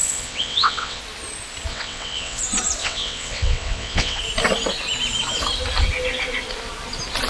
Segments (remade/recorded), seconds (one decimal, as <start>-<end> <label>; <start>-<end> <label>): 0.0-1.0 remade; 1.0-1.7 recorded; 1.7-2.4 remade; 2.4-2.8 recorded; 2.8-4.2 remade; 4.2-7.3 recorded